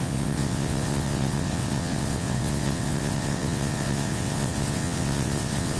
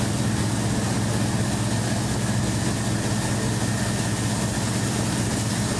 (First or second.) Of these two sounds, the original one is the second